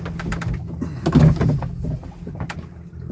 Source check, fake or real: real